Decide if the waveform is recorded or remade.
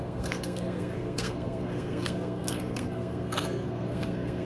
remade